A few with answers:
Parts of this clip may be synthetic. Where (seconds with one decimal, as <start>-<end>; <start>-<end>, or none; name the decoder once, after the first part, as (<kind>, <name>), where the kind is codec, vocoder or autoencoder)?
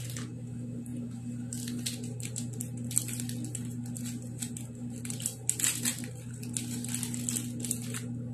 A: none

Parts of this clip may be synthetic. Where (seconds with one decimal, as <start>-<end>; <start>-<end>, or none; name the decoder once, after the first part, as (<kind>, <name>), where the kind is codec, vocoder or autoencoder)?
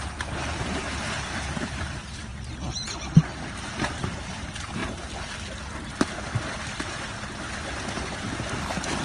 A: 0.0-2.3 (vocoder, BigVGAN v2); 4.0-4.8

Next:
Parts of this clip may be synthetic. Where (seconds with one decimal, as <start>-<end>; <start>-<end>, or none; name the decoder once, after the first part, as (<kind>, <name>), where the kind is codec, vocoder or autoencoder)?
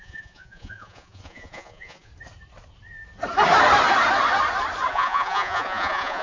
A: 0.0-2.1 (vocoder, Vocos); 4.9-6.2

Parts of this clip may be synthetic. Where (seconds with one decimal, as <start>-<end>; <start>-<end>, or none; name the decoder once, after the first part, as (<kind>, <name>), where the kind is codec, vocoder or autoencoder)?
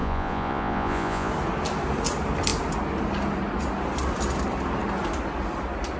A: 0.0-1.3 (vocoder, Vocos)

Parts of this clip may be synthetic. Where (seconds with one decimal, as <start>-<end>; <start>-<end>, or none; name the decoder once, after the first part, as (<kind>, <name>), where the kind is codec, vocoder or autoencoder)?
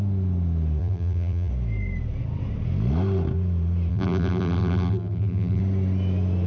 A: 0.8-1.5 (vocoder, BigVGAN v2); 3.9-5.6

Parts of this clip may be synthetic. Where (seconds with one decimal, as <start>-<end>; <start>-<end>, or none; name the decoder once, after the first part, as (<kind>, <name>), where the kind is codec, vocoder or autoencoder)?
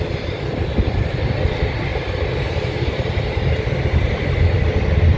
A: 1.9-4.2 (vocoder, BigVGAN v2)